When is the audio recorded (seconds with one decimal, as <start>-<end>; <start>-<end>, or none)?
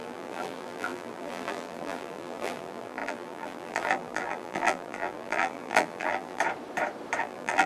6.4-7.2